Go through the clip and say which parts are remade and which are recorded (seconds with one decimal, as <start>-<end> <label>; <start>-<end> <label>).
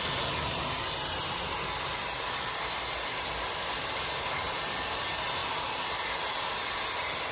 0.0-7.3 recorded